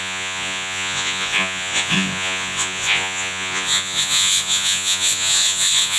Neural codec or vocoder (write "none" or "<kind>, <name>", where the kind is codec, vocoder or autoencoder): vocoder, Vocos